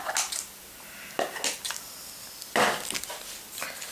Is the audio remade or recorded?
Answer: recorded